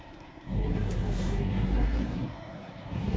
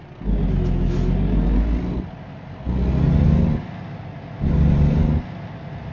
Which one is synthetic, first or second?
first